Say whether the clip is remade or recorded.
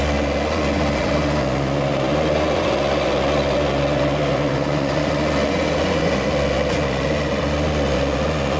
remade